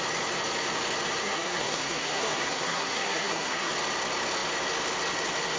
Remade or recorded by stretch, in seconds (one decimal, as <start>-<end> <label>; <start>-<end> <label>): 0.0-1.2 recorded; 1.2-3.7 remade; 3.7-5.6 recorded